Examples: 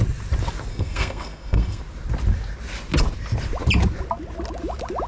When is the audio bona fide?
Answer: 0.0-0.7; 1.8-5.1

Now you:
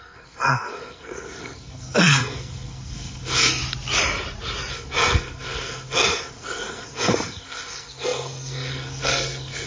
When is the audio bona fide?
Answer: 3.6-4.7

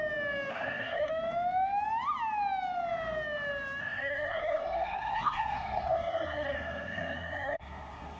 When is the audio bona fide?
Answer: 0.0-0.5; 1.1-3.8

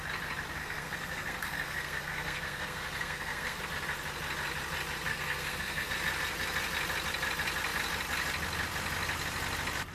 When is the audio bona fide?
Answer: 0.0-0.6; 3.6-5.1; 5.9-9.9

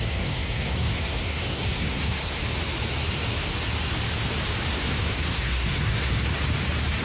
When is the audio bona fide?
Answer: 2.4-4.7; 6.1-7.0